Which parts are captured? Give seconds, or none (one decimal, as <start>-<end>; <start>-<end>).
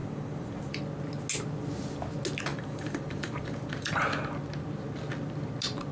0.8-2.5; 4.0-5.9